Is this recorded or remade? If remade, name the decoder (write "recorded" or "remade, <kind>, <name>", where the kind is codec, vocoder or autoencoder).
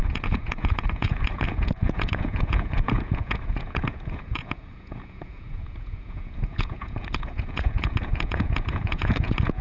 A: remade, vocoder, Vocos